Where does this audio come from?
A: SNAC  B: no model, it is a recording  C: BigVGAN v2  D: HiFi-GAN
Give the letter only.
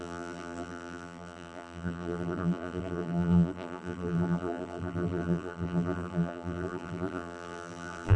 C